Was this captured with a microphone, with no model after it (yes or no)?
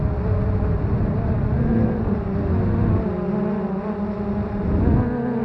yes